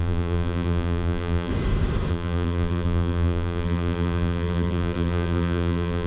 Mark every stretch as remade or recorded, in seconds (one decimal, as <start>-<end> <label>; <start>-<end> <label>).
0.0-1.5 remade; 1.5-2.1 recorded; 2.1-6.1 remade